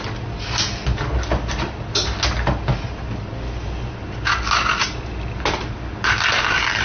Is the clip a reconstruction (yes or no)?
no